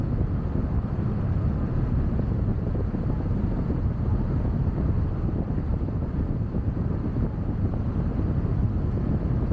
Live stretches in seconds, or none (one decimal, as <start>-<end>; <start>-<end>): 0.0-2.5; 4.7-5.7; 7.7-9.5